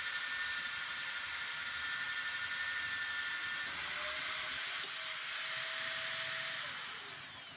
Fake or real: real